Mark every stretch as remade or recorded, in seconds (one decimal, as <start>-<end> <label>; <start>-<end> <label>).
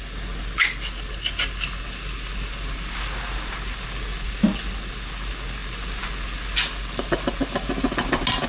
0.0-8.5 recorded